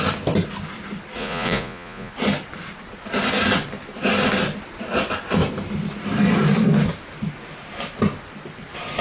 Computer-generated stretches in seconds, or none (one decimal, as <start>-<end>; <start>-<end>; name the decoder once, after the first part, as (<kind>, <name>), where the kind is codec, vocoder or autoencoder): 1.2-2.1 (vocoder, Vocos)